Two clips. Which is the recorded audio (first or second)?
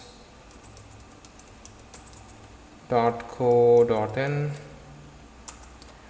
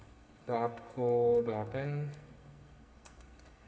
first